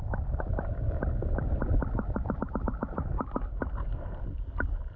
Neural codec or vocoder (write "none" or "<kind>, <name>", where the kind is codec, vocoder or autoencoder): vocoder, BigVGAN v2